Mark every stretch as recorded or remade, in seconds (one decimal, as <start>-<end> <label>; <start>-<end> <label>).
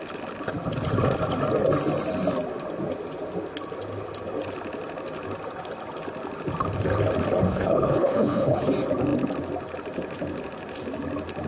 0.0-7.5 recorded; 7.5-8.7 remade; 8.7-11.5 recorded